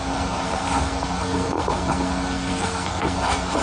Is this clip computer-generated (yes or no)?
yes